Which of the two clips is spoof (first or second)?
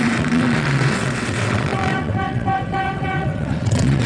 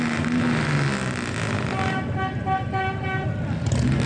first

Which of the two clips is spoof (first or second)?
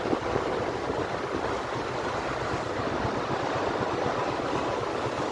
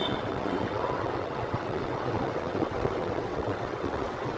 second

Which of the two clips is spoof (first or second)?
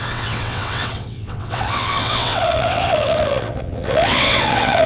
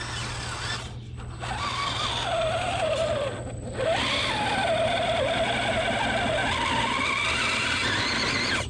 first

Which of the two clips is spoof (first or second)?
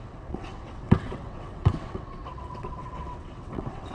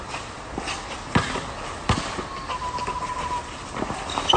first